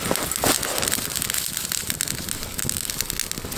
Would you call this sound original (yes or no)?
yes